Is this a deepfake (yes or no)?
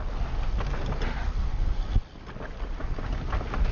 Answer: no